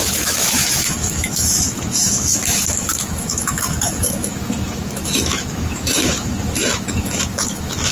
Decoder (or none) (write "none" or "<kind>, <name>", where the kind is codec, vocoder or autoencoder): autoencoder, DAC-VAE